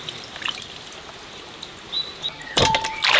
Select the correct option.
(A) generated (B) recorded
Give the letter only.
B